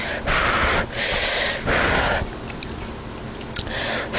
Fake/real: real